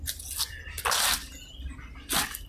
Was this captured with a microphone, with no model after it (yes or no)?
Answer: yes